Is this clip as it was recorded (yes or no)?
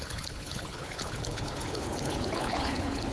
no